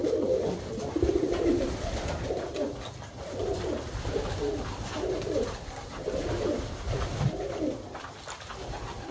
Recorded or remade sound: recorded